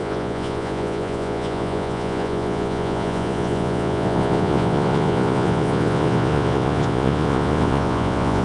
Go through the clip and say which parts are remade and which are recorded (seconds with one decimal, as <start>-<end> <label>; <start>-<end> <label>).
0.0-8.4 remade